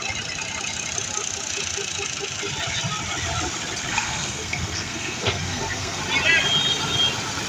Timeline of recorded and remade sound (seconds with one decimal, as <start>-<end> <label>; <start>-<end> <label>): 0.0-3.9 recorded; 3.9-6.0 remade; 6.0-7.5 recorded